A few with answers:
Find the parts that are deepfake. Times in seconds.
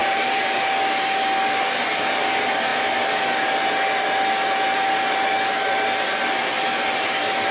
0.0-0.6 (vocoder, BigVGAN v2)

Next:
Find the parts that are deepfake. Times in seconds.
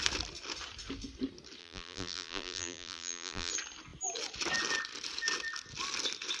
1.6-3.5 (vocoder, BigVGAN v2)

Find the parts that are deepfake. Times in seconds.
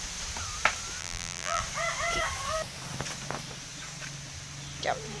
1.0-1.6 (vocoder, BigVGAN v2)